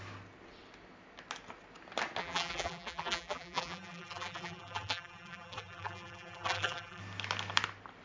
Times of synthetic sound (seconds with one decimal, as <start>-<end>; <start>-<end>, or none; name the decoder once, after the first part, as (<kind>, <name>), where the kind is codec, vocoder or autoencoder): 2.2-7.0 (vocoder, BigVGAN v2)